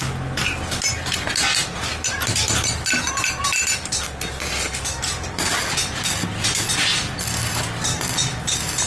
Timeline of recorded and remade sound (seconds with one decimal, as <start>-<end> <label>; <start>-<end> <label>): 0.0-8.9 recorded